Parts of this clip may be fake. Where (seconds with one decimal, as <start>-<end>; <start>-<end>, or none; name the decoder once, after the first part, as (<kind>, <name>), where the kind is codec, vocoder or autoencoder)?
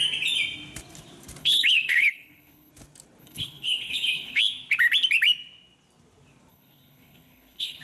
1.4-2.7 (codec, HILCodec); 3.2-4.4; 6.5-7.8